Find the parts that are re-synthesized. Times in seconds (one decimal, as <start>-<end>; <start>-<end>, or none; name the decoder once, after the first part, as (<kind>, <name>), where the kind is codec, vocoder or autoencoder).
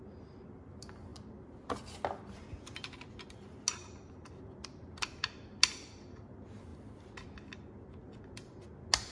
none